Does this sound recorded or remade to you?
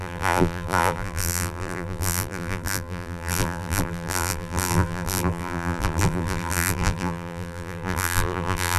remade